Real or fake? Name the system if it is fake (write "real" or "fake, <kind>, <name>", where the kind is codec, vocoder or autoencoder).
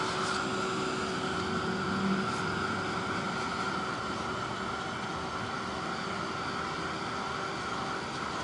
real